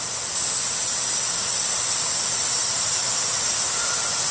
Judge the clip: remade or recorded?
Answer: recorded